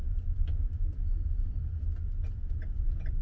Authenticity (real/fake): real